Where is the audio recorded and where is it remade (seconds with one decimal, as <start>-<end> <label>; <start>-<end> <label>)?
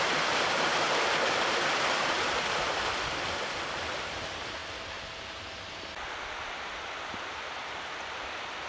0.0-4.6 remade; 4.6-7.3 recorded; 7.3-8.7 remade